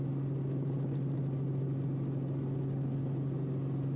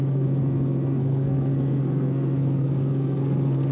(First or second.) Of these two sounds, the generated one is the second